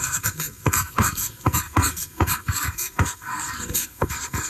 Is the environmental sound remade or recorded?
remade